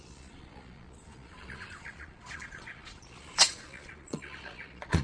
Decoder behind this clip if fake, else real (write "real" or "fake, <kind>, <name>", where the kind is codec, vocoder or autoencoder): fake, vocoder, Vocos